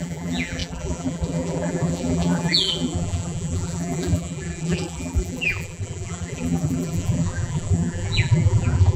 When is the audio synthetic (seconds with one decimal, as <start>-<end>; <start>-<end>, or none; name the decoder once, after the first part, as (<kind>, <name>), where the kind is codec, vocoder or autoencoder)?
0.0-9.0 (vocoder, BigVGAN v2)